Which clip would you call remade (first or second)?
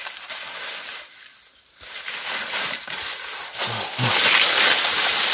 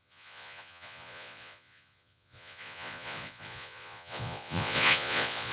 second